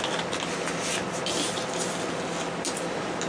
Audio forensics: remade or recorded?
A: recorded